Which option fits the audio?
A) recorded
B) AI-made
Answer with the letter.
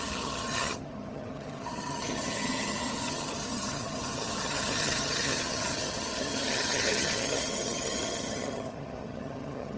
B